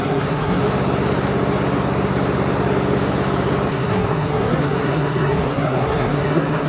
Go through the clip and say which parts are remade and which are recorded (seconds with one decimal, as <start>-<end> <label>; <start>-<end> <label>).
0.0-0.6 remade; 0.6-3.7 recorded; 3.7-6.7 remade